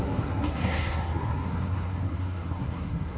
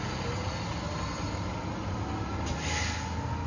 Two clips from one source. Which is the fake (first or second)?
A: first